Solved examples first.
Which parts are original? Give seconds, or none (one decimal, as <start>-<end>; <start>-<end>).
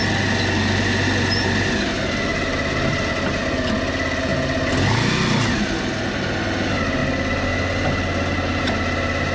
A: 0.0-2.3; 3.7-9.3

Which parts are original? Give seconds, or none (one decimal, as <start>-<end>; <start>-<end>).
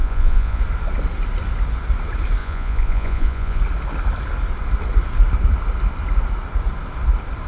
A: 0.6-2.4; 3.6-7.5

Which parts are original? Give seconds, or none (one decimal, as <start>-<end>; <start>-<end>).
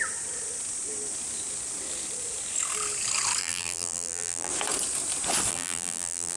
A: 0.0-3.4; 4.5-5.5